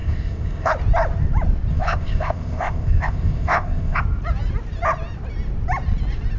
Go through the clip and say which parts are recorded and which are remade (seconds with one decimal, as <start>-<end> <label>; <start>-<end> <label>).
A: 0.0-0.7 remade; 0.7-1.7 recorded; 1.7-4.0 remade; 4.0-6.4 recorded